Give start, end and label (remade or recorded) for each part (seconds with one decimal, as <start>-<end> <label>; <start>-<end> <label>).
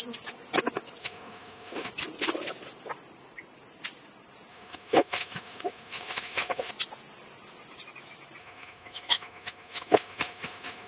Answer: 0.0-1.0 recorded; 1.0-1.9 remade; 1.9-4.5 recorded; 4.5-6.7 remade; 6.7-8.4 recorded; 8.4-10.9 remade